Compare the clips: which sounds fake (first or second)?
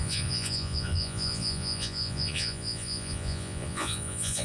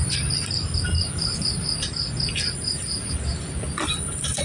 first